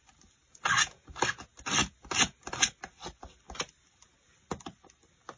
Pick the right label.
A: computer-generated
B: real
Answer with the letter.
B